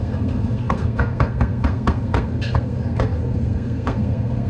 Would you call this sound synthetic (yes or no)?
yes